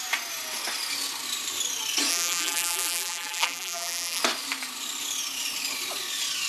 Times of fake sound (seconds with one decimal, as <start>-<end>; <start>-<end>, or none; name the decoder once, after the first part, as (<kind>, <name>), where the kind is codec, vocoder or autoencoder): 2.1-4.2 (vocoder, BigVGAN v2)